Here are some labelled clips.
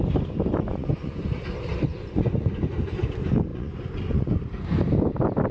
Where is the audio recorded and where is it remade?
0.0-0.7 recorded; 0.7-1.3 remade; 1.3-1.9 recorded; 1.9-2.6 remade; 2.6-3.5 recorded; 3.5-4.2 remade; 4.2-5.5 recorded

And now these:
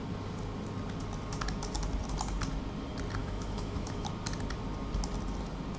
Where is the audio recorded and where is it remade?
0.0-3.2 recorded; 3.2-4.1 remade; 4.1-5.8 recorded

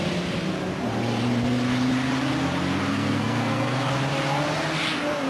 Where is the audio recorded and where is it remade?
0.0-2.9 recorded; 2.9-3.9 remade; 3.9-5.3 recorded

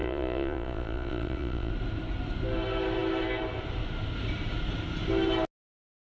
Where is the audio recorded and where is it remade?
0.0-1.7 remade; 1.7-6.2 recorded